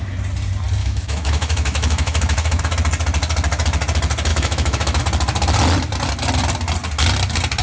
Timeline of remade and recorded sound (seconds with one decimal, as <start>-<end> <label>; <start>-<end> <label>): 0.0-0.8 recorded; 0.8-2.6 remade; 2.6-4.3 recorded; 4.3-5.0 remade; 5.0-7.6 recorded

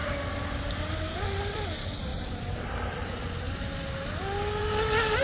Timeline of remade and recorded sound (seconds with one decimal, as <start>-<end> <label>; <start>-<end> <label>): 0.0-5.2 recorded

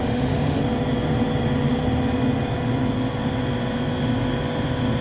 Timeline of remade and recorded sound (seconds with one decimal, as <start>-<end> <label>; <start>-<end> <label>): 0.0-0.6 remade; 0.6-5.0 recorded

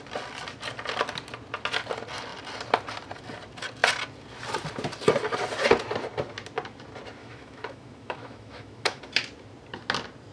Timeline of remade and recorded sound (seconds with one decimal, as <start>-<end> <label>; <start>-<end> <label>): 0.0-7.2 recorded; 7.2-9.0 remade; 9.0-10.3 recorded

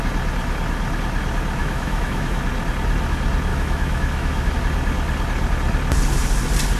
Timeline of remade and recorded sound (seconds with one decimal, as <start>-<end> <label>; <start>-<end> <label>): 0.0-1.6 recorded; 1.6-2.4 remade; 2.4-3.5 recorded; 3.5-4.5 remade; 4.5-6.8 recorded

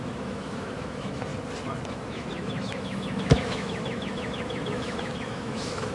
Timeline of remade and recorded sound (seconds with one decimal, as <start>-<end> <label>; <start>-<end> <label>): 0.0-1.3 remade; 1.3-1.9 recorded; 1.9-5.9 remade